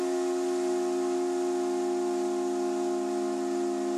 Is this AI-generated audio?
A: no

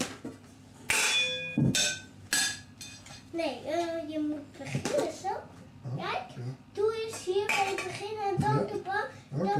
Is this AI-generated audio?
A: no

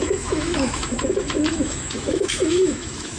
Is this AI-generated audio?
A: yes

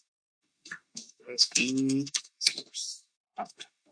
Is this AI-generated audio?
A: yes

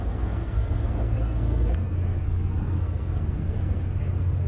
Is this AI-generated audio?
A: yes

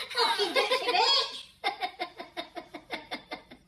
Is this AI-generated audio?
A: yes